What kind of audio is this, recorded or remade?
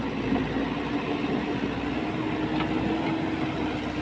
recorded